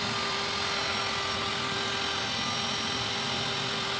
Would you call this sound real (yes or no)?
yes